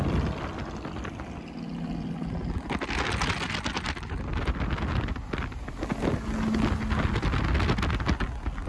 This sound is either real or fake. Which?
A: real